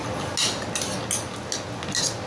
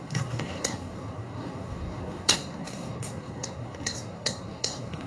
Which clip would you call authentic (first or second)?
first